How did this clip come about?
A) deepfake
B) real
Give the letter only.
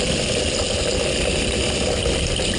B